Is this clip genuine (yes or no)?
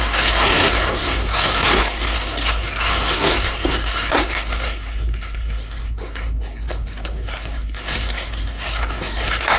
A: no